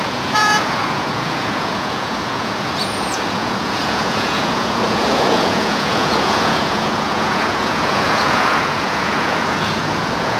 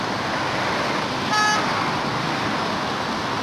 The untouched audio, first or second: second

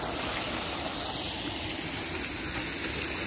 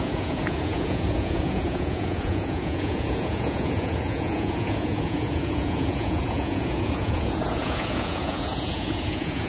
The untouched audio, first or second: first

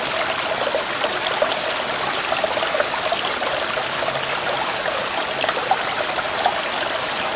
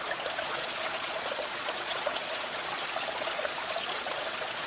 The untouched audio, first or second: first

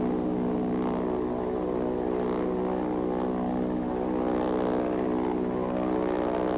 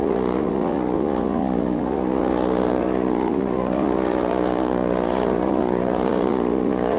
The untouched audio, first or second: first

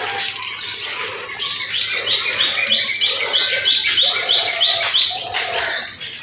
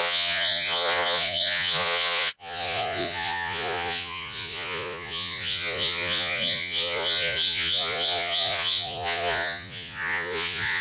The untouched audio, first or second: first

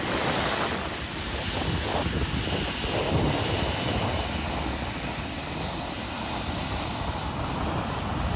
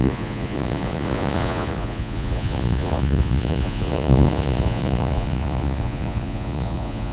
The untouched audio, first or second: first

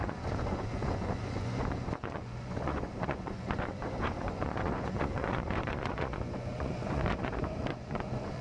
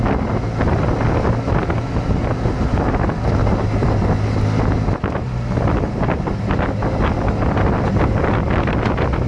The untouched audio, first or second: second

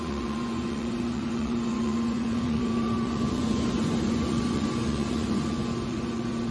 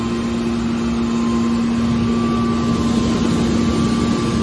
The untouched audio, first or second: second